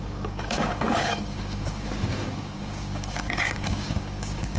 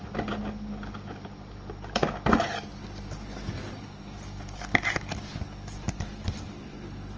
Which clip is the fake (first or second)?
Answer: first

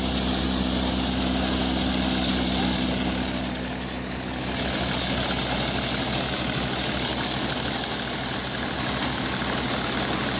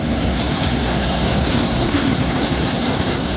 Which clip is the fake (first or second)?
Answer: second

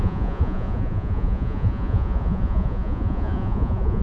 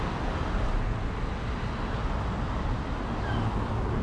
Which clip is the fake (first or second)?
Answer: first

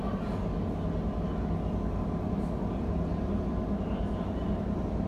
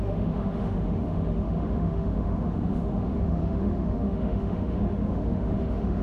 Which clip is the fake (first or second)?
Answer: second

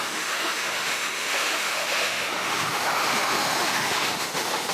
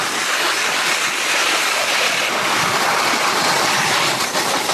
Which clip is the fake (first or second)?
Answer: first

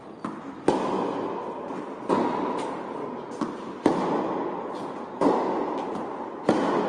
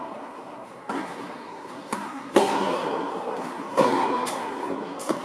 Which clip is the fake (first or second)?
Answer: second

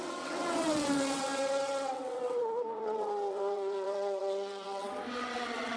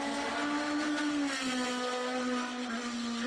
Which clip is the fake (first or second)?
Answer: first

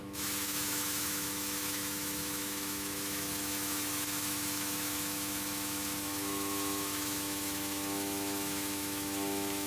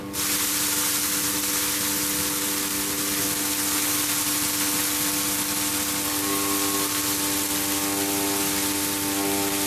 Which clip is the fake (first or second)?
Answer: first